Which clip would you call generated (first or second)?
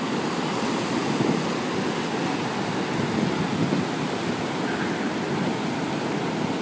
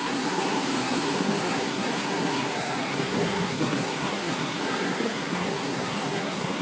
second